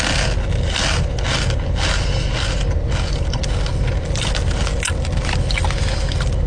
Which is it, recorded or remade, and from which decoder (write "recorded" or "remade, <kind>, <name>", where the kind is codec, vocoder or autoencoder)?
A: recorded